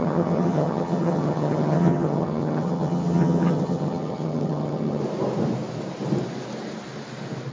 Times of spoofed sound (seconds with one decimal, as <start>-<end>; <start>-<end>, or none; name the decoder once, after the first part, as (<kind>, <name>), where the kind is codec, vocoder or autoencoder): 0.0-5.0 (vocoder, HiFi-GAN)